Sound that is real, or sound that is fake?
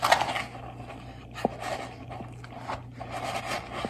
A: real